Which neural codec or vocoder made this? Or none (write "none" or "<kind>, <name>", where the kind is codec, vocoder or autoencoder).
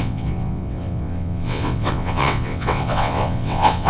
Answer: vocoder, WaveNeXt